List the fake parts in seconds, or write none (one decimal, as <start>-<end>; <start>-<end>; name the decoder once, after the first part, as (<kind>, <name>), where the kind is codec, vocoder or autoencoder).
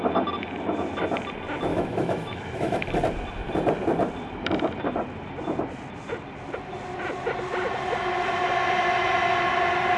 1.7-3.0 (autoencoder, DAC-VAE)